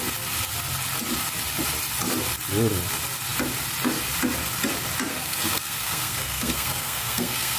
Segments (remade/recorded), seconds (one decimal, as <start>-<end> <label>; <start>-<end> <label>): 0.0-5.1 recorded; 5.1-7.6 remade